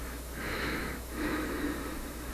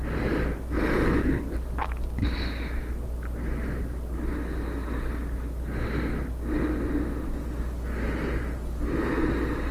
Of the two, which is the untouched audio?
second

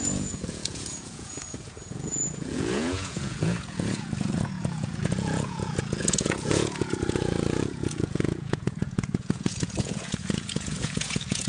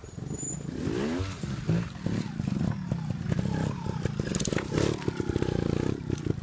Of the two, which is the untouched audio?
second